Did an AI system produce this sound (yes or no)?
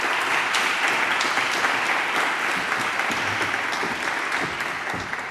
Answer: no